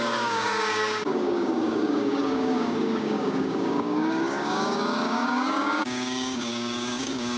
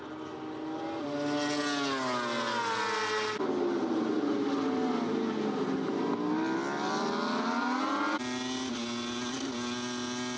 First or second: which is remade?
first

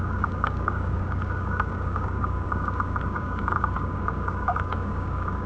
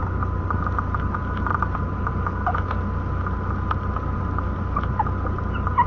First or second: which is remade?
first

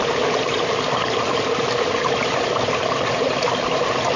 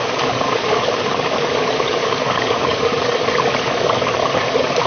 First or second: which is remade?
second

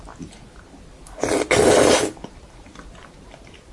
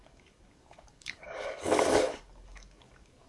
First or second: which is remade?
second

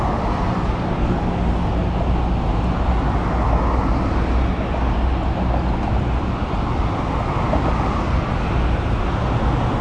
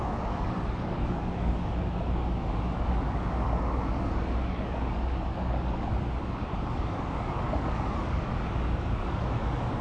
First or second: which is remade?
second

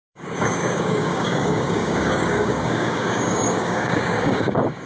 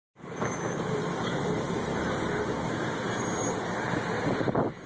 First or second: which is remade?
first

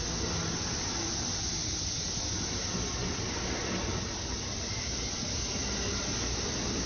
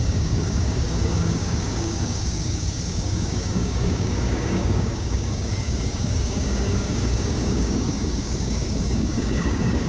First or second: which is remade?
second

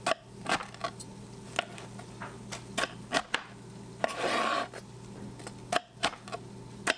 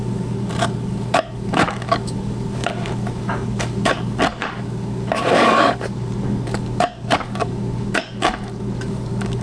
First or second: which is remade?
second